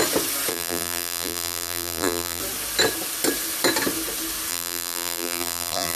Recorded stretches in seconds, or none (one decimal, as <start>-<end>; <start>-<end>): 0.0-0.5; 2.4-4.5